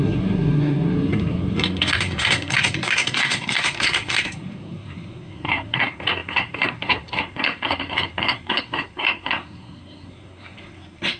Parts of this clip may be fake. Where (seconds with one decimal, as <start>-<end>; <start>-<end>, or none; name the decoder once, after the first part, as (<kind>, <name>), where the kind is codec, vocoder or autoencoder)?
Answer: 0.0-11.2 (codec, SNAC)